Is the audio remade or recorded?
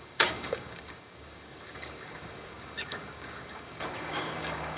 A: remade